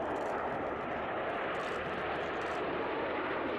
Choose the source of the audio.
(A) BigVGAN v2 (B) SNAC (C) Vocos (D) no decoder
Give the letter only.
A